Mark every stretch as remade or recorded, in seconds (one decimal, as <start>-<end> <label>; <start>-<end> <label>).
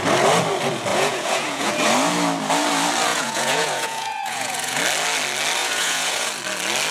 0.0-0.9 recorded; 0.9-1.7 remade; 1.7-3.1 recorded; 3.1-4.8 remade; 4.8-5.6 recorded; 5.6-6.3 remade; 6.3-6.9 recorded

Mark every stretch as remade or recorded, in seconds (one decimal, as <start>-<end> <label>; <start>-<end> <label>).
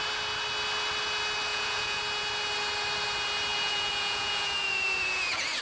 0.0-1.5 recorded; 1.5-2.0 remade; 2.0-3.5 recorded; 3.5-5.6 remade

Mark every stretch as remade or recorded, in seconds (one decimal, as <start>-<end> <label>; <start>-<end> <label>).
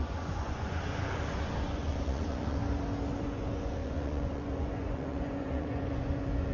0.0-2.6 remade; 2.6-3.2 recorded; 3.2-6.5 remade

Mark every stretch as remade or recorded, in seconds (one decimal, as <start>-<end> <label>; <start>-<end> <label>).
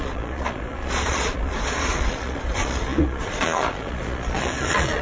0.0-5.0 remade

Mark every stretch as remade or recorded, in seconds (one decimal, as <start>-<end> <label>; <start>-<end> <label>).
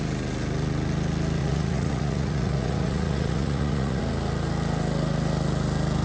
0.0-1.4 recorded; 1.4-4.0 remade; 4.0-6.0 recorded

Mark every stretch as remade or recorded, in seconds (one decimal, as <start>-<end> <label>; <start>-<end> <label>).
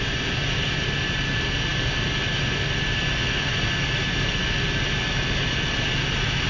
0.0-6.5 recorded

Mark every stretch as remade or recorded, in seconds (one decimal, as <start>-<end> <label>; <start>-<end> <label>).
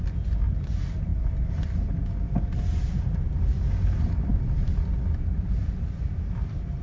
0.0-6.8 recorded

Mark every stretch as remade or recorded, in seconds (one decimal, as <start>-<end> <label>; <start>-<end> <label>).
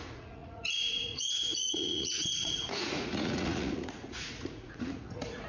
0.0-5.5 remade